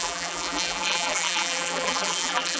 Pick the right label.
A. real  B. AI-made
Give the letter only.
B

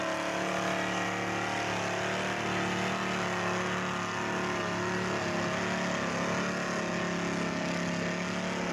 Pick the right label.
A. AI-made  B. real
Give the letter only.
B